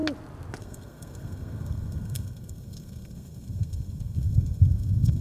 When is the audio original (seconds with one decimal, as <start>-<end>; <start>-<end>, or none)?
0.0-0.6